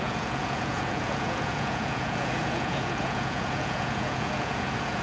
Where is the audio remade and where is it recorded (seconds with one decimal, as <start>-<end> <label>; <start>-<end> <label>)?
0.0-5.0 remade